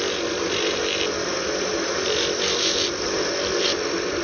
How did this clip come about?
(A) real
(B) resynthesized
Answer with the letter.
A